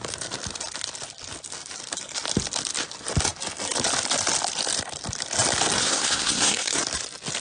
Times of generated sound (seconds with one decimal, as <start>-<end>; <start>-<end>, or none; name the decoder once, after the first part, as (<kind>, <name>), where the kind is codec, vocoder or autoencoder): 5.8-6.8 (codec, SNAC)

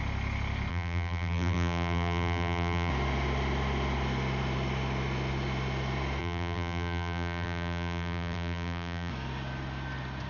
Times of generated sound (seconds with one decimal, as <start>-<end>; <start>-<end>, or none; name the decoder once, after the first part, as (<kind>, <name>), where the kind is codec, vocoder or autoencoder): 0.7-2.9 (vocoder, BigVGAN v2); 6.2-9.1

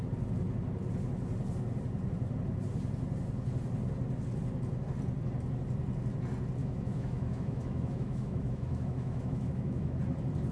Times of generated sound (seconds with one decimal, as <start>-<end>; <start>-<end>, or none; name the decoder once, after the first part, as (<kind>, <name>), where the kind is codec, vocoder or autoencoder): 6.6-10.0 (autoencoder, DAC-VAE)

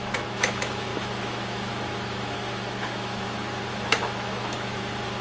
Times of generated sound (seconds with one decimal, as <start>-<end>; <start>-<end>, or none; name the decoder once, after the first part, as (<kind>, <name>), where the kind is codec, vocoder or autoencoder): 0.0-5.2 (autoencoder, DAC-VAE)

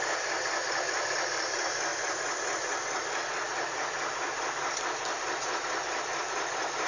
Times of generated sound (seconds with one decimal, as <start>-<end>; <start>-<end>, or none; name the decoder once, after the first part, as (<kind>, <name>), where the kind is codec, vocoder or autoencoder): none

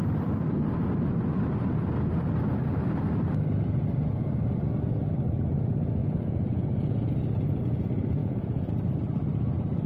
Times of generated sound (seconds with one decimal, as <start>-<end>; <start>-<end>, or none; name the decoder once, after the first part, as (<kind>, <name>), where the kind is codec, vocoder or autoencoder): 6.0-7.1 (vocoder, Vocos); 8.2-8.7

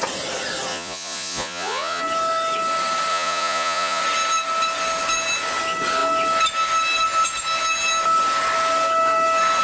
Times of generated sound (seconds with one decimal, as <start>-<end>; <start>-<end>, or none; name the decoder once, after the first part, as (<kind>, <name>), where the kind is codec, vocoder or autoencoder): 0.7-2.0 (vocoder, Vocos); 3.1-4.0

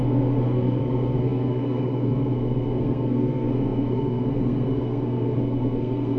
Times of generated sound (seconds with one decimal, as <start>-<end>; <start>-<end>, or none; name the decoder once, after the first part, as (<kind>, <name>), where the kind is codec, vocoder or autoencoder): 0.0-6.2 (codec, SNAC)